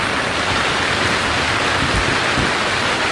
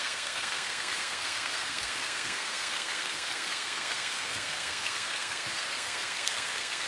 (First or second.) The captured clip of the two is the first